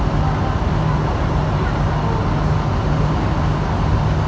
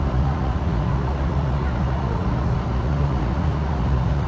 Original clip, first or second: first